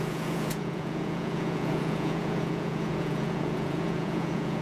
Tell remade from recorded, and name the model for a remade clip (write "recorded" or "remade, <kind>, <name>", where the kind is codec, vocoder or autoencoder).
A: remade, vocoder, Vocos